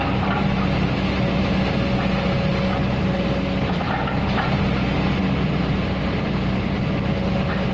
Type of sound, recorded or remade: recorded